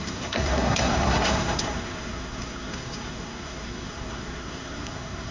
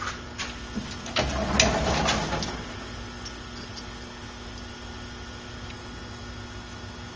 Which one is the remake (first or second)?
first